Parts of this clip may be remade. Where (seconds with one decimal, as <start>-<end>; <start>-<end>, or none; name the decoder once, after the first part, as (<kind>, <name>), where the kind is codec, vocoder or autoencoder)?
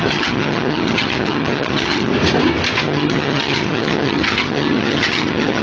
0.0-2.1 (vocoder, HiFi-GAN); 2.8-5.6